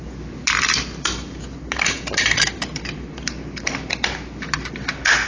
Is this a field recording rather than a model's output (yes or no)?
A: yes